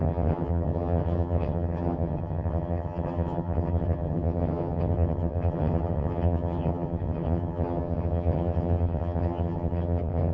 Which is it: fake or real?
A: fake